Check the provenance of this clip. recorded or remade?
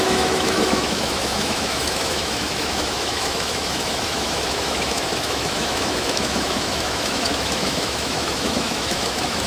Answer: remade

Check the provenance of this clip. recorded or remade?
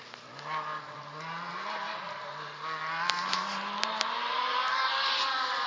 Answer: recorded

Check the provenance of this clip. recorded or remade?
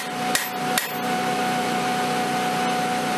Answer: recorded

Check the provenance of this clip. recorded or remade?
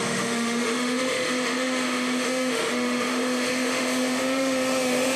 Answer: remade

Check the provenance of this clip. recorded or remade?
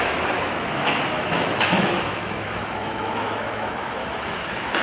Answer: remade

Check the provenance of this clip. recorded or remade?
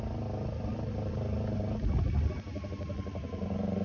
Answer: recorded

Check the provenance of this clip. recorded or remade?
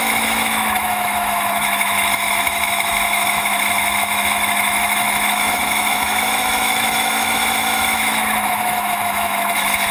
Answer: remade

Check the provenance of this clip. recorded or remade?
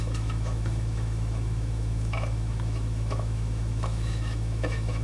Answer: remade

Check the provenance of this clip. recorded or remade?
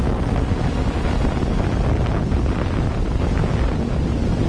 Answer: recorded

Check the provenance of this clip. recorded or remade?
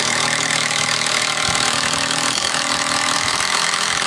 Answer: remade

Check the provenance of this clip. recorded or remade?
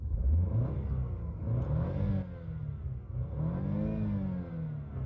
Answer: recorded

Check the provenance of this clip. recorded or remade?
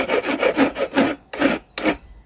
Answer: recorded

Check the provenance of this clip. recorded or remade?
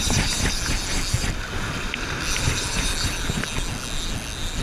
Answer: recorded